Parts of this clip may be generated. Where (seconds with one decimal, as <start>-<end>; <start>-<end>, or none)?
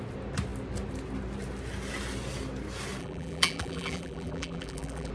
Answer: 3.0-5.1